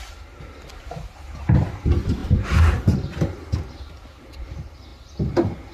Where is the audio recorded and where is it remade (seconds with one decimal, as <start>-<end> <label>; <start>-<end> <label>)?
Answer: 0.0-5.7 recorded